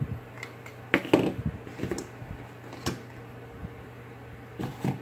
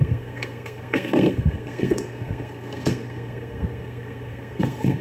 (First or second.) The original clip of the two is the first